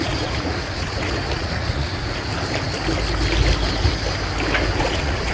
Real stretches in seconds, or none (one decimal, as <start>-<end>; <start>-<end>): 2.3-4.8

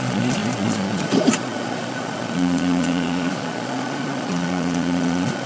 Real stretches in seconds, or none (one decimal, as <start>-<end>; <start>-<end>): none